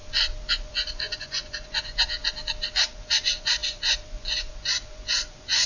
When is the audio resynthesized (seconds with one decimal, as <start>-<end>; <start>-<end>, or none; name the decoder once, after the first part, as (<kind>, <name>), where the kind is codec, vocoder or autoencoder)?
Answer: 0.5-2.2 (vocoder, Vocos); 2.8-5.7